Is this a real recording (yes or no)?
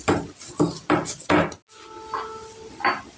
yes